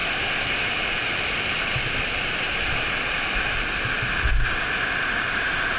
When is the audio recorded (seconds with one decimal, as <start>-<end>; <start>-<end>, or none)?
0.0-5.8